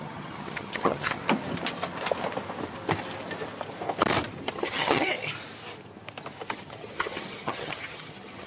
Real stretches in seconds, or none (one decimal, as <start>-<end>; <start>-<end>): 1.2-4.5; 5.1-6.5